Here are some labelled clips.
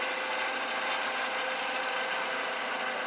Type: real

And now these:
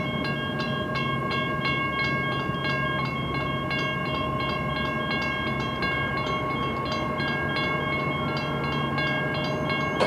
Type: real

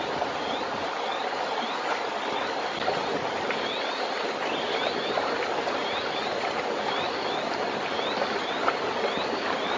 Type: real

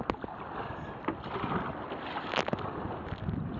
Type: real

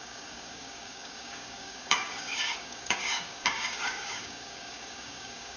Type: fake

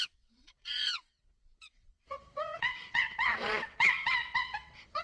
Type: fake